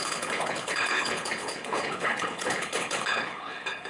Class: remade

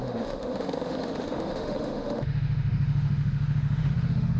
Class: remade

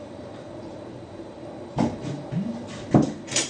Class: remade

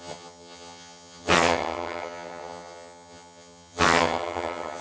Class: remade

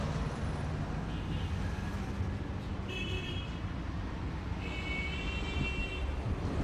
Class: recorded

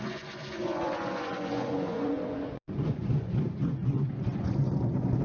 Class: remade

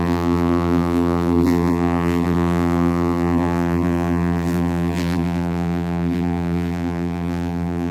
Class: remade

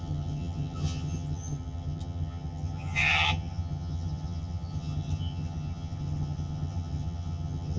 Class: remade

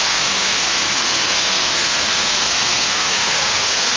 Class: remade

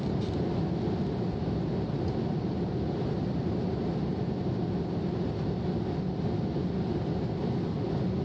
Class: recorded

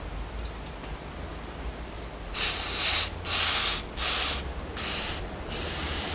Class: recorded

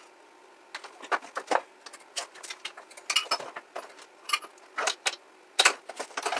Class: recorded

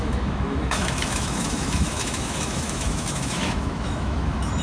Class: remade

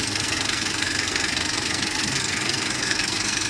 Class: remade